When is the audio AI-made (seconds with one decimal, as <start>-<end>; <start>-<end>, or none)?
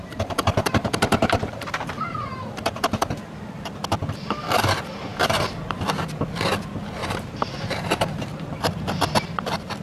0.0-3.8; 7.0-8.6